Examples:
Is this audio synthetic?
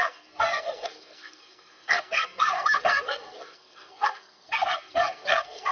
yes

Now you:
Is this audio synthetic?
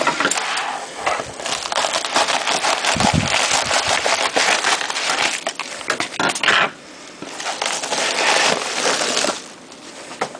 no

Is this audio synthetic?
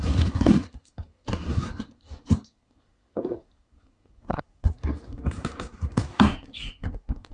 yes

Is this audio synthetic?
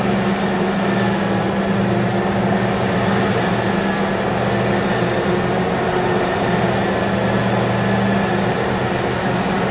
no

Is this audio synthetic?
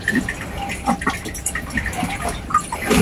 no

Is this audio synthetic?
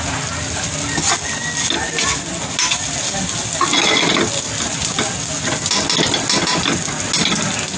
no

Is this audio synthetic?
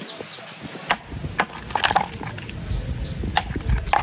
no